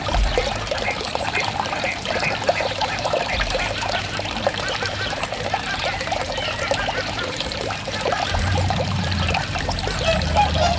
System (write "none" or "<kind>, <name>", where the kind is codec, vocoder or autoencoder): vocoder, BigVGAN v2